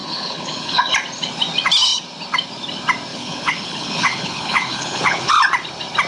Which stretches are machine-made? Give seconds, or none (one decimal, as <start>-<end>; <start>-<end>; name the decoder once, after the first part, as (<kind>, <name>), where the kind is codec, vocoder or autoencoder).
0.0-0.9 (codec, HILCodec); 3.1-5.3